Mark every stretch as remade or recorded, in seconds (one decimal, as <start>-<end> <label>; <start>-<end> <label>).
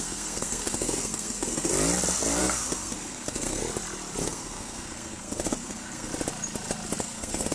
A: 0.0-1.7 remade; 1.7-2.4 recorded; 2.4-3.6 remade; 3.6-4.2 recorded; 4.2-6.1 remade; 6.1-7.0 recorded; 7.0-7.5 remade